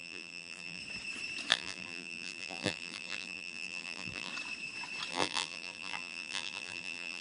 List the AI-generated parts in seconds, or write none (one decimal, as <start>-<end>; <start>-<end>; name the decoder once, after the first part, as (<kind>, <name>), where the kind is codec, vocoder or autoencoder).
0.0-0.8 (vocoder, BigVGAN v2); 1.5-4.3; 5.1-7.2